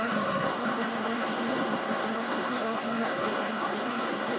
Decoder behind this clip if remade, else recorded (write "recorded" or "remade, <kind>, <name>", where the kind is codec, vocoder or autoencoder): remade, codec, SNAC